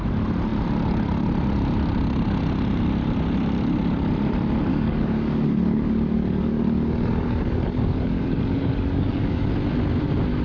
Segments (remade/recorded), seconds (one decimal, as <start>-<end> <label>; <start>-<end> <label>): 0.0-4.7 recorded; 4.7-9.5 remade; 9.5-10.4 recorded

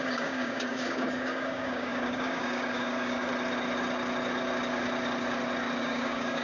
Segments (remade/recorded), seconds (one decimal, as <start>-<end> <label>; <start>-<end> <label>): 0.0-3.3 remade; 3.3-5.8 recorded; 5.8-6.4 remade

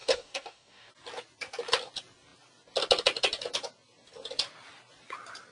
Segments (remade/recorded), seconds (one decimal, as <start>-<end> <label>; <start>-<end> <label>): 0.0-0.9 remade; 0.9-5.5 recorded

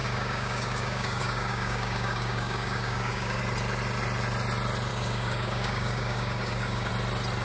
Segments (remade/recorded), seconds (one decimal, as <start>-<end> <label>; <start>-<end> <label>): 0.0-3.4 remade; 3.4-4.9 recorded; 4.9-6.9 remade; 6.9-7.4 recorded

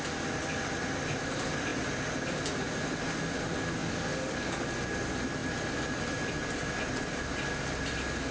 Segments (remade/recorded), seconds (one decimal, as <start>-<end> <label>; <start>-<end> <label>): 0.0-3.8 recorded; 3.8-4.6 remade; 4.6-8.3 recorded

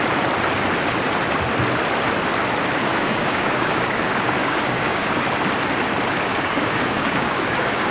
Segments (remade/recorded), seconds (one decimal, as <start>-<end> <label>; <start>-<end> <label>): 0.0-2.9 recorded; 2.9-4.0 remade; 4.0-4.4 recorded; 4.4-5.2 remade; 5.2-6.3 recorded; 6.3-7.9 remade

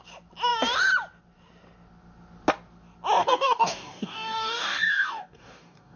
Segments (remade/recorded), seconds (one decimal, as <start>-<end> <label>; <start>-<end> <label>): 0.0-3.2 recorded; 3.2-6.0 remade

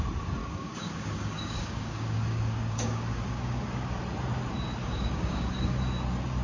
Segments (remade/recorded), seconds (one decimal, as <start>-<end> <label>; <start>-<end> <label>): 0.0-0.4 recorded; 0.4-4.0 remade; 4.0-4.8 recorded; 4.8-5.8 remade; 5.8-6.4 recorded